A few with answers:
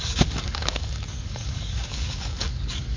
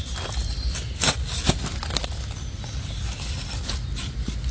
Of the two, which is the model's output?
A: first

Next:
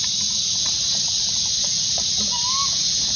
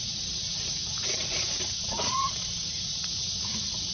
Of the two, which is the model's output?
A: second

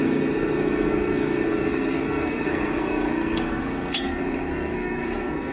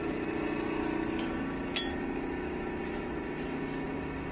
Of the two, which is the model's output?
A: first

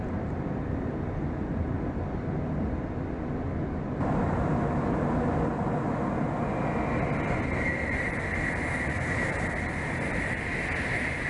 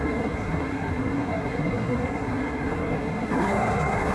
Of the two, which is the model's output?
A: second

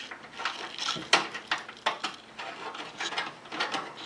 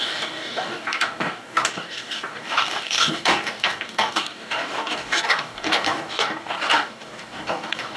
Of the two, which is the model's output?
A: second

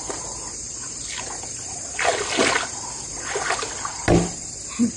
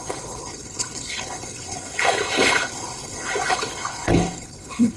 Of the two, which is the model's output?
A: second